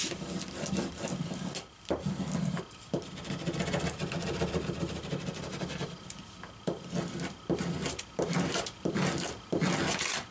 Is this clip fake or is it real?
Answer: real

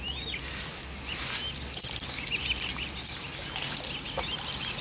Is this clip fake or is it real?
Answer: real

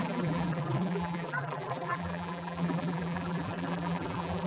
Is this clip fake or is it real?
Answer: fake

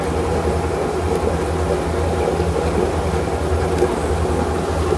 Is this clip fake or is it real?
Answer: real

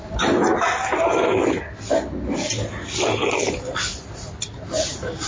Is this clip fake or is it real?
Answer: real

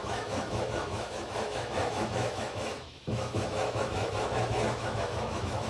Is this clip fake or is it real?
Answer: fake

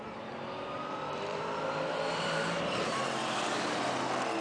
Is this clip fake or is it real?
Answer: fake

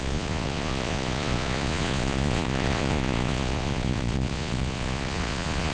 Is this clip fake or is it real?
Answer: fake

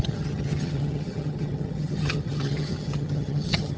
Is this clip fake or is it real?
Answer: fake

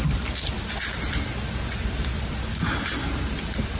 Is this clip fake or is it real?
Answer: real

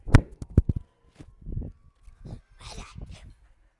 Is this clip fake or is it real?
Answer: real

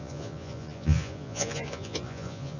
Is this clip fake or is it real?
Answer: fake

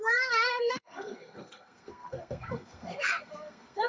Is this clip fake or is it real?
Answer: fake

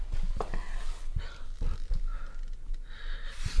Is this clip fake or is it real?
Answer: real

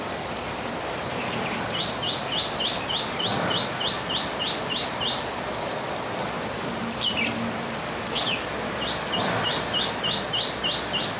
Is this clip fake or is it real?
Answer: real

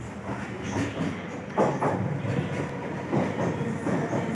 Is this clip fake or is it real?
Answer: real